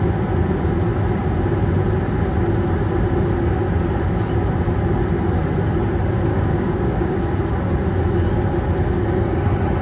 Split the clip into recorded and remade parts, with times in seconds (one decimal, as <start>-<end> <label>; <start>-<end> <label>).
0.0-6.3 recorded; 6.3-7.1 remade; 7.1-9.8 recorded